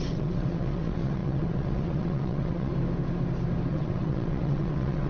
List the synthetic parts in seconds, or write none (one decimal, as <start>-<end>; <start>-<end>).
0.0-2.7; 3.7-5.1